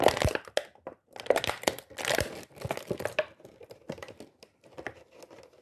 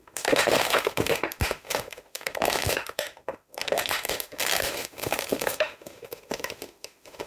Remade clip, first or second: second